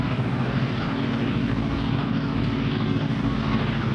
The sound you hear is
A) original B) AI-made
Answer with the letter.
B